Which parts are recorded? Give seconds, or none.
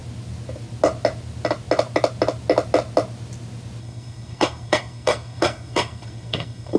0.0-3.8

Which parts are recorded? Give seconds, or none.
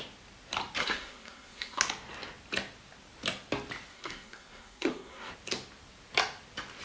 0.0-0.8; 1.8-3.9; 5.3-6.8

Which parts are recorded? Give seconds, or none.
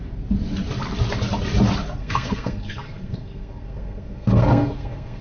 0.0-2.0